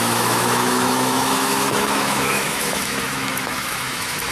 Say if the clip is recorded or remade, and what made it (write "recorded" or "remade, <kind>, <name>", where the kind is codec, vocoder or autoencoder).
remade, autoencoder, DAC-VAE